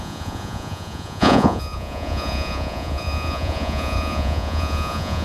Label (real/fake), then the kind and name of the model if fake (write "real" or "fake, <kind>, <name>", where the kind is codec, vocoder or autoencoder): fake, vocoder, Vocos